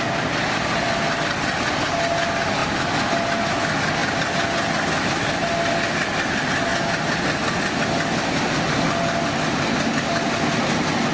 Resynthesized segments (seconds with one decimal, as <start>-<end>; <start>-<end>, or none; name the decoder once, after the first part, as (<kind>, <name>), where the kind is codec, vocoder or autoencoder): none